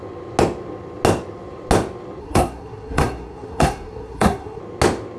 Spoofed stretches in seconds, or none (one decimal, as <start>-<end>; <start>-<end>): 2.2-4.6